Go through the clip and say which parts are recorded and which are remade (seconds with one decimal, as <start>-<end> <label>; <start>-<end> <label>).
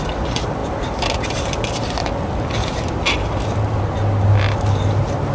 0.0-0.6 recorded; 0.6-3.8 remade; 3.8-5.3 recorded